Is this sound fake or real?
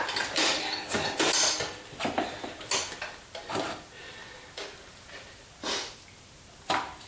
real